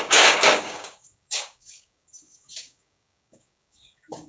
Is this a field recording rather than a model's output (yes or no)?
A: no